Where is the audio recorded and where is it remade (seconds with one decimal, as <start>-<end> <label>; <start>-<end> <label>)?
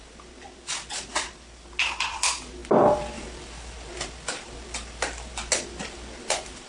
0.0-2.6 recorded; 2.6-6.7 remade